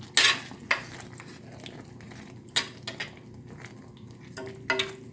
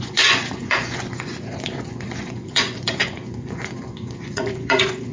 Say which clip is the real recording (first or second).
first